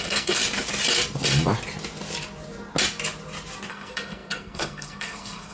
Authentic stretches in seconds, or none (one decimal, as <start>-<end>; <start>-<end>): 0.4-3.7